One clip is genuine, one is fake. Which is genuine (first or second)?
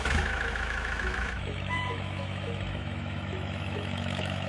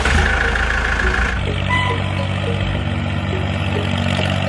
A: second